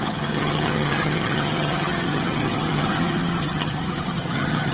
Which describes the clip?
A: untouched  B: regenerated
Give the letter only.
B